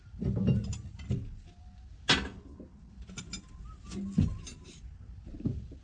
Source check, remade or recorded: recorded